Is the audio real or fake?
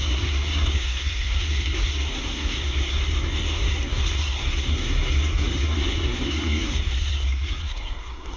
fake